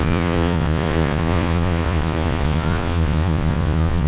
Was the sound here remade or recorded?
remade